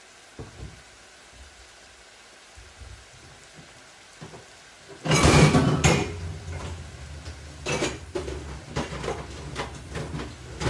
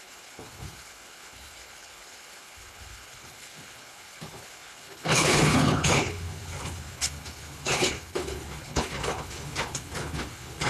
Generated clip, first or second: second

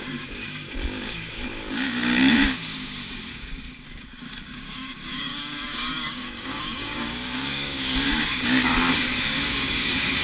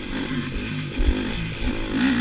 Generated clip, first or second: first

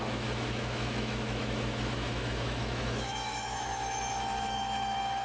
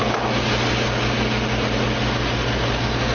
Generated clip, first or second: first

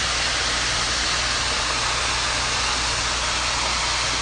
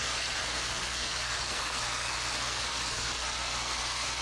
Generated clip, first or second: second